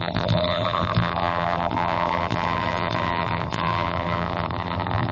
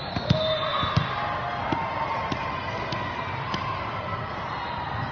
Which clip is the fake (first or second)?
first